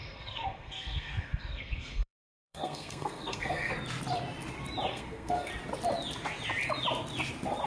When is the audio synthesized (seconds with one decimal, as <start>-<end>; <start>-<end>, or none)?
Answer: 0.0-3.7; 4.9-5.5

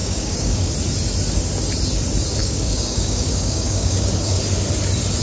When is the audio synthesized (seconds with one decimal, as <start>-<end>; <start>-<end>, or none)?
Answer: 0.0-0.7; 2.4-4.4

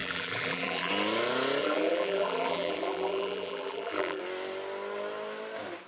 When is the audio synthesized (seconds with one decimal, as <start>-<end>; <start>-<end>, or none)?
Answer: 0.0-0.9; 1.6-4.2

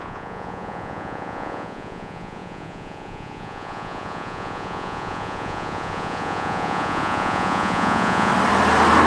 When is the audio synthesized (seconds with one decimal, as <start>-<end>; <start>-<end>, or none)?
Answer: 0.0-8.3

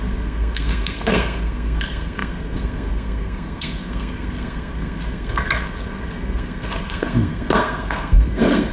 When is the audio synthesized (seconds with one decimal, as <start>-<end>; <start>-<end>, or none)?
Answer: 0.0-8.7